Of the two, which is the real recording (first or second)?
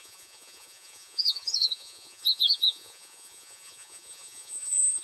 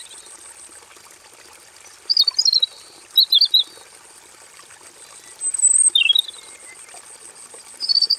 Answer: second